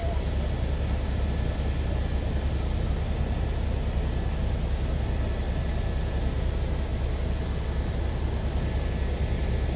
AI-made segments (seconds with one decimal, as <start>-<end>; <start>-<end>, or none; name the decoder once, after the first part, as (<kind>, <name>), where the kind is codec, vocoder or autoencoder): none